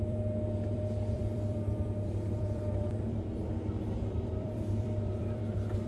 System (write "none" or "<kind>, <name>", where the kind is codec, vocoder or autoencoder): vocoder, BigVGAN v2